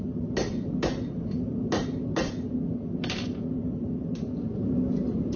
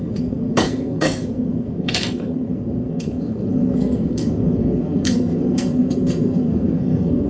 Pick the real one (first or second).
first